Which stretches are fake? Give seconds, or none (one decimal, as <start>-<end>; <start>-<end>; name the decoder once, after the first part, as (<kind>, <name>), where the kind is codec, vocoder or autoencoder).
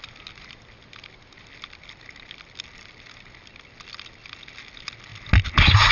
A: none